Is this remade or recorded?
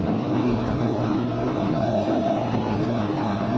remade